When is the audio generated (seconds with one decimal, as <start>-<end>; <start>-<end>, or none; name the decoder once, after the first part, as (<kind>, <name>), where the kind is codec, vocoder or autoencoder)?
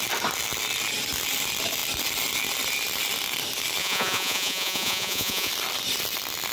3.8-5.5 (vocoder, Vocos)